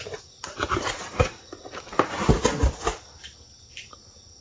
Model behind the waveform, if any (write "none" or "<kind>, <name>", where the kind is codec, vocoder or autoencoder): none